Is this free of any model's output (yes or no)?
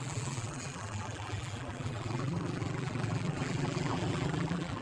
no